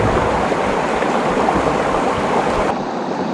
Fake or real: real